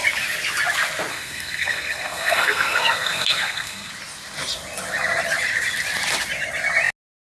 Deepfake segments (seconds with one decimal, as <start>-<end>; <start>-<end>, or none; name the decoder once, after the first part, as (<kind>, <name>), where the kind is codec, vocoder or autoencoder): 1.1-3.9 (codec, SNAC)